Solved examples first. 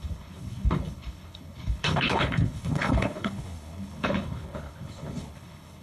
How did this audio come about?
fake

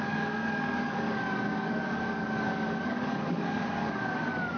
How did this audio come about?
fake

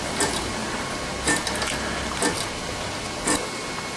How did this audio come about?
real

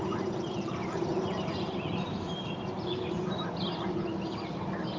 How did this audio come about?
real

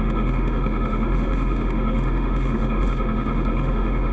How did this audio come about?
fake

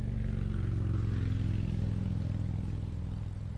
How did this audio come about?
real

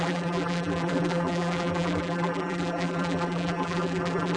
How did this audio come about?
fake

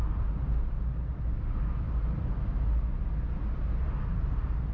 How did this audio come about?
real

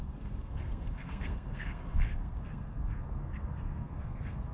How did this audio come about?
fake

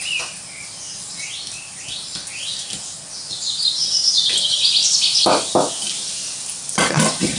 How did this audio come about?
real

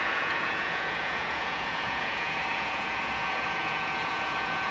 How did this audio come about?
fake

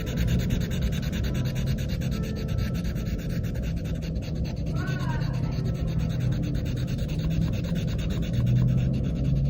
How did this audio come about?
real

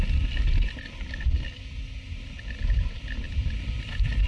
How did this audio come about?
real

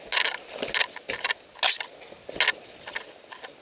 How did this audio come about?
real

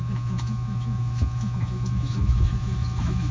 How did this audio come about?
fake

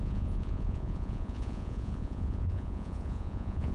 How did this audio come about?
fake